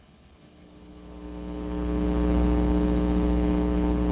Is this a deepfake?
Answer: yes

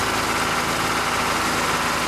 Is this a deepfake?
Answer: no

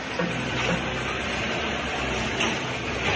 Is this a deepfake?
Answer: yes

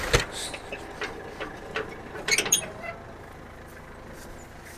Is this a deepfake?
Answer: no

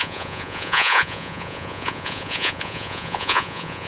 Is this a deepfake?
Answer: yes